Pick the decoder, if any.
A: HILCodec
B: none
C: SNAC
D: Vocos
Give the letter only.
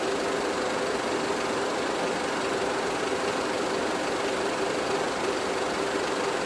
B